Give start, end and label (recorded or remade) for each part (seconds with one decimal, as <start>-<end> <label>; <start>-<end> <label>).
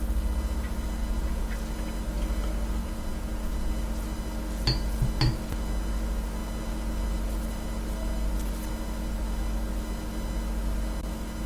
0.0-1.0 recorded; 1.0-1.5 remade; 1.5-2.8 recorded; 2.8-3.7 remade; 3.7-11.5 recorded